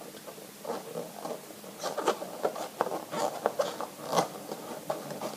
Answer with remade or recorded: remade